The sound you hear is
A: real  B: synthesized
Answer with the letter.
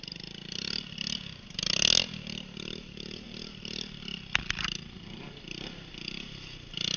A